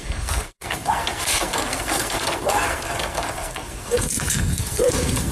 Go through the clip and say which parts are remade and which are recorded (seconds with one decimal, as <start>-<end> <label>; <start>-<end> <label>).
0.0-5.3 remade